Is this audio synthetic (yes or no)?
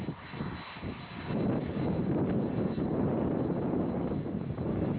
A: no